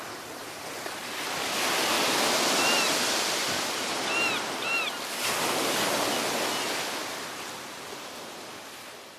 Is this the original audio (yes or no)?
yes